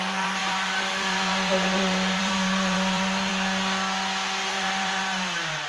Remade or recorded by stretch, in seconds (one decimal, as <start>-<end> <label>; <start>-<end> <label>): 0.0-3.3 remade; 3.3-4.5 recorded; 4.5-5.7 remade